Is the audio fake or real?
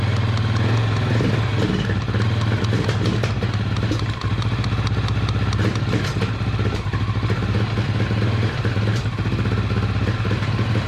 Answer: real